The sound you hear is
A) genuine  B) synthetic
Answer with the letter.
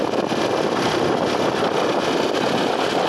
A